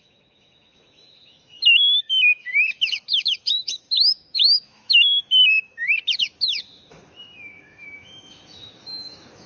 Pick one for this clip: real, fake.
fake